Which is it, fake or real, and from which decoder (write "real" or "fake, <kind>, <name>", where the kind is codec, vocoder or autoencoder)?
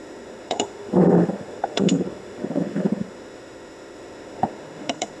fake, autoencoder, DAC-VAE